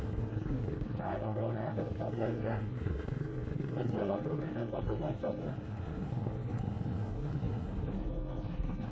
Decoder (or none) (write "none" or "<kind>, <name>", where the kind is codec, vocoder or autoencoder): codec, SNAC